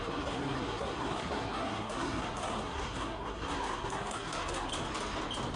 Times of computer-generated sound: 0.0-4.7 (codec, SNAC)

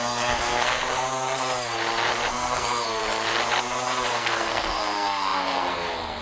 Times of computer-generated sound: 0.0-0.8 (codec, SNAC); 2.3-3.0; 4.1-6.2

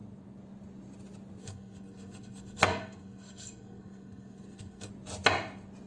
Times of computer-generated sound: 1.4-4.9 (codec, SNAC)